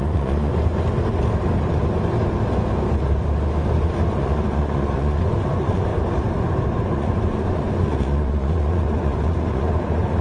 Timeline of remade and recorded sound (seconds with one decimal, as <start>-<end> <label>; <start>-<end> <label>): 0.0-0.5 remade; 0.5-4.1 recorded; 4.1-5.9 remade; 5.9-6.9 recorded; 6.9-10.2 remade